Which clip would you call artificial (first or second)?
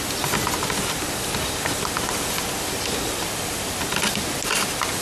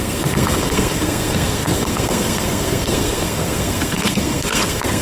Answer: second